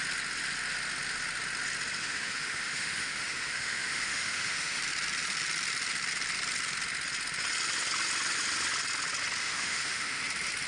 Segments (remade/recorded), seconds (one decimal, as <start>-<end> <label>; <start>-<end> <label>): 0.0-2.0 recorded; 2.0-4.8 remade; 4.8-9.4 recorded; 9.4-10.2 remade; 10.2-10.7 recorded